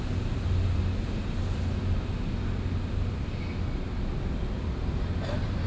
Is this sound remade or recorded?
recorded